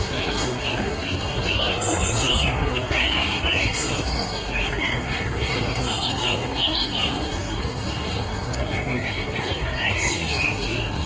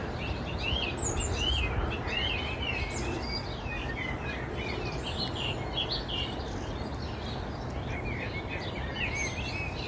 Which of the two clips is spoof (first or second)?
first